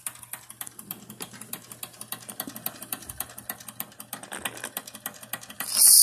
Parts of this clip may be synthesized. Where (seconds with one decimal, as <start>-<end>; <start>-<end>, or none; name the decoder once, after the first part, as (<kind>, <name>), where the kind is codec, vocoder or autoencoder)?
none